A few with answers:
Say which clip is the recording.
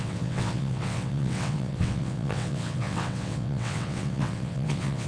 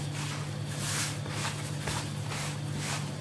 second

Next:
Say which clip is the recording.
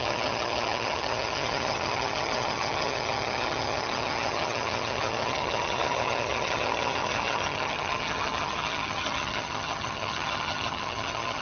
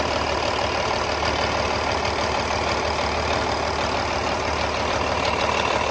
second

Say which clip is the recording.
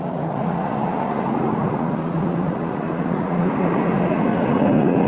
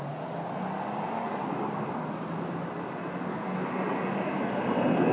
second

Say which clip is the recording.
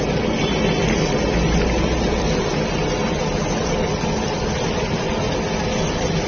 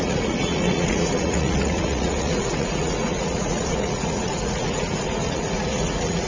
first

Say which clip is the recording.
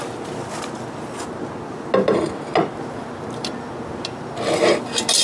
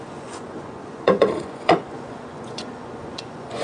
first